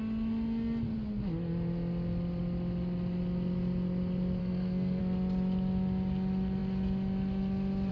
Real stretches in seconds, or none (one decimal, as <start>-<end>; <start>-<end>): 0.0-4.4; 5.0-7.9